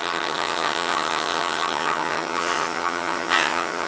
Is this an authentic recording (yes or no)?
no